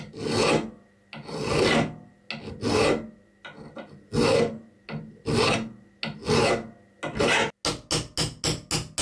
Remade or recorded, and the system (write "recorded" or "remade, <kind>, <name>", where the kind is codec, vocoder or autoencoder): recorded